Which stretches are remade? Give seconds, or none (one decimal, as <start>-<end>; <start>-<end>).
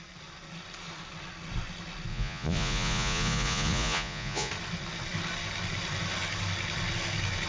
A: 2.1-4.5